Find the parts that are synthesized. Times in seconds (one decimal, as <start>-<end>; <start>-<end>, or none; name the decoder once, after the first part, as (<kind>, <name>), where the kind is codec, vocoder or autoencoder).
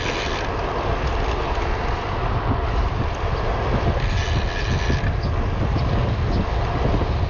none